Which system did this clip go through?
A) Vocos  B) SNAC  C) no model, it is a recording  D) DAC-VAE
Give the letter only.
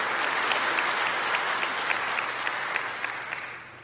C